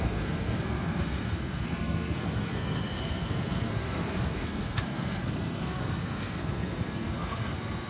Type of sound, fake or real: fake